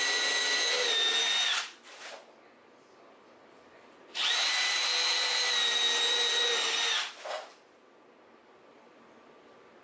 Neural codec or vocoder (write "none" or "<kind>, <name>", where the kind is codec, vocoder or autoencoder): none